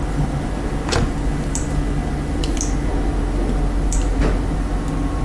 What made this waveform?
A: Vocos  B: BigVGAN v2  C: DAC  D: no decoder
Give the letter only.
D